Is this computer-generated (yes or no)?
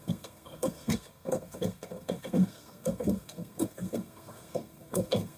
yes